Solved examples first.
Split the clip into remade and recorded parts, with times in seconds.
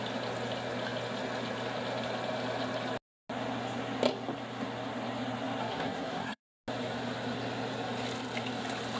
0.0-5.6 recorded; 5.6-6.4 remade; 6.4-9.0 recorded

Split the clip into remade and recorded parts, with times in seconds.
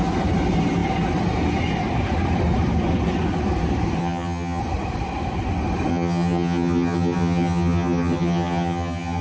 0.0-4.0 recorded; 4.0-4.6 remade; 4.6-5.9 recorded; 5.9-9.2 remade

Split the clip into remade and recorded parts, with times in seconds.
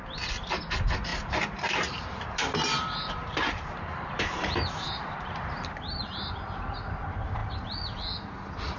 0.0-1.1 recorded; 1.1-6.3 remade; 6.3-8.8 recorded